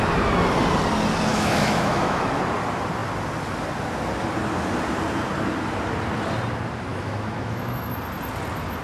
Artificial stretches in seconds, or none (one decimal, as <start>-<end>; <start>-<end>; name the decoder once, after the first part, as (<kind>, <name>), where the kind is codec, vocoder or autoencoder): 1.3-2.4 (autoencoder, DAC-VAE); 6.9-7.9